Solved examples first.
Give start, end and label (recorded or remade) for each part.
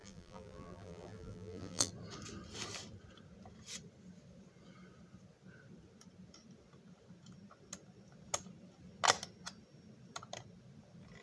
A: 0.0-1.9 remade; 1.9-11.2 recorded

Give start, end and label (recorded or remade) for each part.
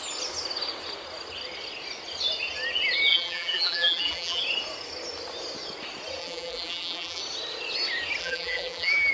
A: 0.0-3.1 recorded; 3.1-4.4 remade; 4.4-6.2 recorded; 6.2-7.2 remade; 7.2-8.2 recorded; 8.2-9.1 remade